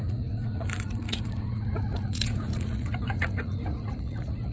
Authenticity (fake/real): fake